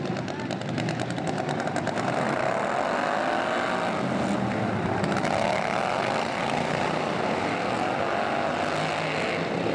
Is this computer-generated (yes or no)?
no